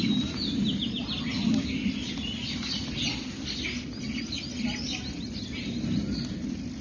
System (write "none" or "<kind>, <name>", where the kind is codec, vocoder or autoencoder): none